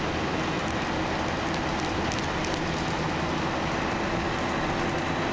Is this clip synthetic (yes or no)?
no